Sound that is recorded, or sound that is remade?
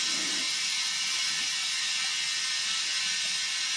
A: recorded